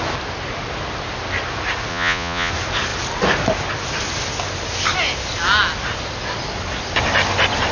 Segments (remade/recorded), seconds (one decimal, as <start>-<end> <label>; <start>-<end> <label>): 0.0-1.9 recorded; 1.9-2.5 remade; 2.5-7.7 recorded